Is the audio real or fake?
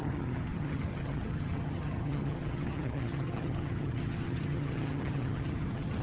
fake